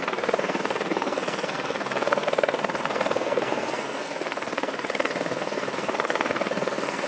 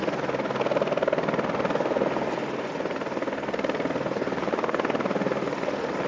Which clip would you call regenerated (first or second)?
first